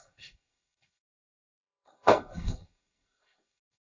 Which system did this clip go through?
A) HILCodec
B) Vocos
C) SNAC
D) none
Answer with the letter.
C